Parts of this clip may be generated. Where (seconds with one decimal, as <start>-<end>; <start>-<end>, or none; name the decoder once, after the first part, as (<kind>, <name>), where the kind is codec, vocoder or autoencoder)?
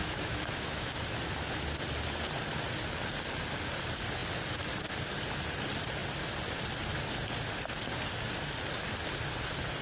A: 0.0-1.0 (autoencoder, DAC-VAE)